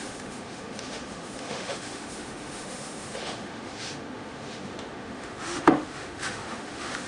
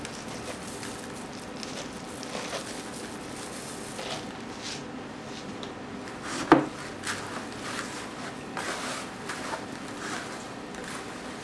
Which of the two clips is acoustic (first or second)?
second